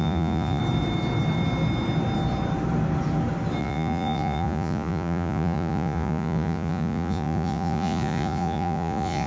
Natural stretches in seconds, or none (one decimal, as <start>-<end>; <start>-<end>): 0.6-3.6